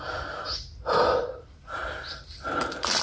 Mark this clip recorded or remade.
recorded